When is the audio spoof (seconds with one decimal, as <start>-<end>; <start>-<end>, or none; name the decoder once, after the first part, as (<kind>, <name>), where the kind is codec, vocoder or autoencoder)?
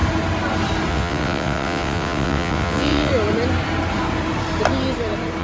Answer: 0.9-3.1 (vocoder, WaveNeXt)